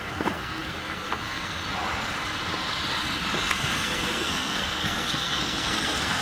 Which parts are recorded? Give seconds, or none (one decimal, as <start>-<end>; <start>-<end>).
1.6-3.5